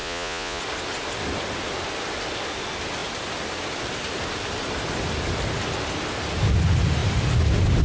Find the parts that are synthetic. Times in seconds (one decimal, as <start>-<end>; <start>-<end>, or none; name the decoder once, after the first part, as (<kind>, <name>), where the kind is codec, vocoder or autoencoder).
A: 0.0-0.6 (vocoder, Vocos)